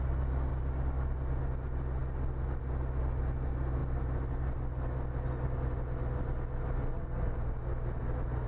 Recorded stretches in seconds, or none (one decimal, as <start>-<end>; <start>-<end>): 0.0-8.5